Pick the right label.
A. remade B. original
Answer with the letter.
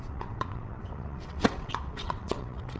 A